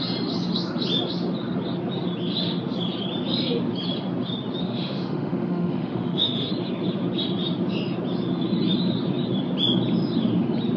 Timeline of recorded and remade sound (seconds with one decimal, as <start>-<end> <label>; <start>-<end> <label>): 0.0-4.6 recorded; 4.6-6.5 remade; 6.5-10.8 recorded